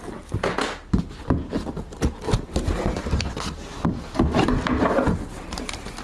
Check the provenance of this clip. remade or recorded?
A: recorded